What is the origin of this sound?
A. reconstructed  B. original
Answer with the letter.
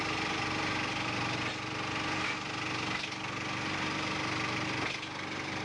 B